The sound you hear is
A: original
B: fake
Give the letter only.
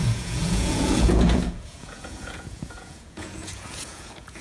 B